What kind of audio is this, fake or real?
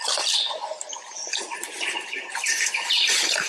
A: real